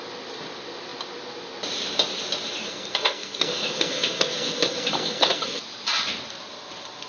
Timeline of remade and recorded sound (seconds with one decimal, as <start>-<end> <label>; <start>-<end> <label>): 0.0-2.6 recorded; 2.6-5.6 remade; 5.6-7.1 recorded